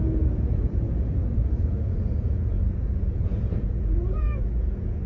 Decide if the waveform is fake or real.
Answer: fake